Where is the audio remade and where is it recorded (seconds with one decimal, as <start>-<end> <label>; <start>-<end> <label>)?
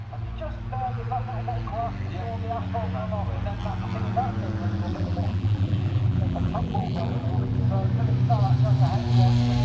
0.0-4.9 recorded; 4.9-7.6 remade; 7.6-9.6 recorded